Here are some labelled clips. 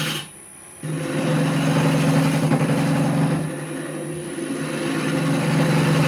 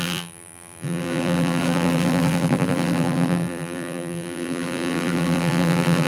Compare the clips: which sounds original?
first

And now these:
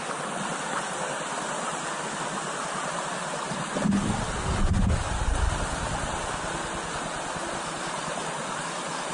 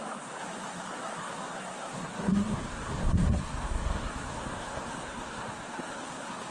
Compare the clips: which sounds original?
first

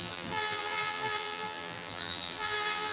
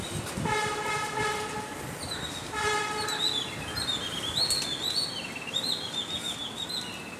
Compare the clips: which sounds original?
second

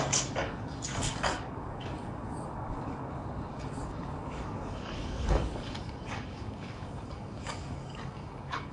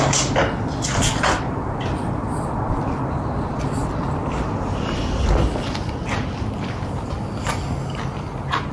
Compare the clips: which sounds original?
second